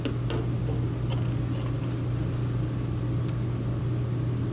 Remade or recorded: recorded